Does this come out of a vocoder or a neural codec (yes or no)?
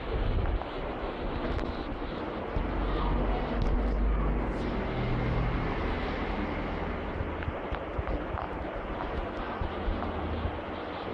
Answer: no